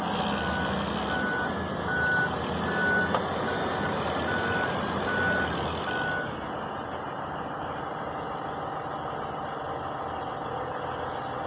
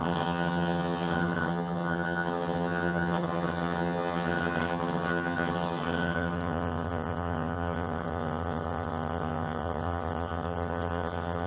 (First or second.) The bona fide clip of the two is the first